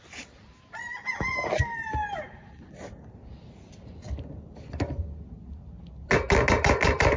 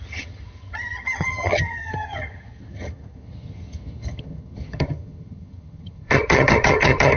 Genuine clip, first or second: first